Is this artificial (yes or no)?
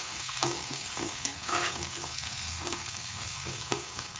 yes